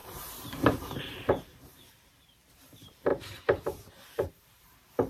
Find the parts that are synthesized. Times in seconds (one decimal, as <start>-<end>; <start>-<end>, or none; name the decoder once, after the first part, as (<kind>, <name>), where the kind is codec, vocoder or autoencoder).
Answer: 0.0-5.1 (vocoder, BigVGAN v2)